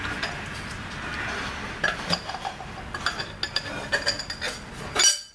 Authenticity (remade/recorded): recorded